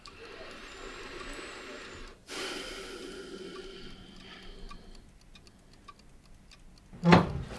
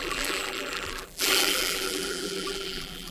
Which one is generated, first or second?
second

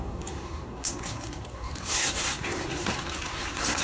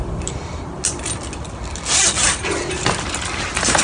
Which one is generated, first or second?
first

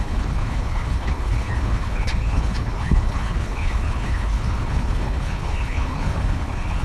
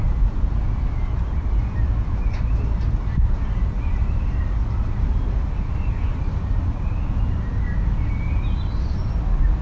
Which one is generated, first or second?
first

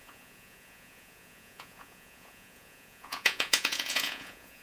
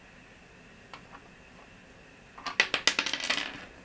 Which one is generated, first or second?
first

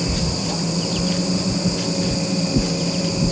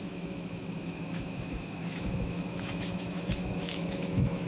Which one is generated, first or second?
second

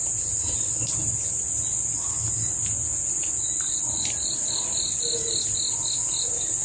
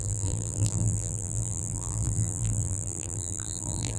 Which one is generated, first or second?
second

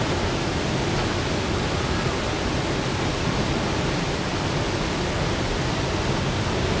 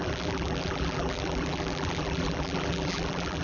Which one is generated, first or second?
second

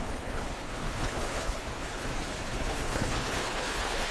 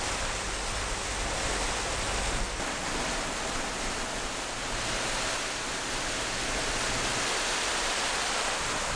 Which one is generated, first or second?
first